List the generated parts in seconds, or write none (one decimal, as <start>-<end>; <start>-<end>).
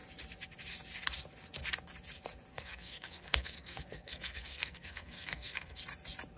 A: 2.5-5.8